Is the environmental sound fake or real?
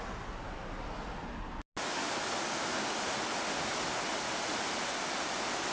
real